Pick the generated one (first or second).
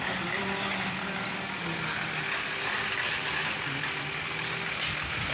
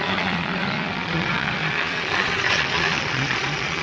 second